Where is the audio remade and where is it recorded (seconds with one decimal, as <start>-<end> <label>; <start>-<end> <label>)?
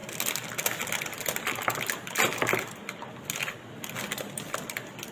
0.0-5.1 recorded